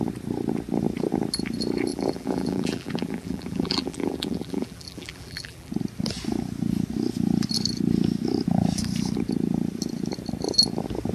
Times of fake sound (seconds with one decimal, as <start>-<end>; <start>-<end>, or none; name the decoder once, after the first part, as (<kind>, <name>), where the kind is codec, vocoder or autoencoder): 1.9-5.7 (vocoder, BigVGAN v2)